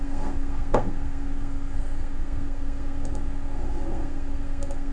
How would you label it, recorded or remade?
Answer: remade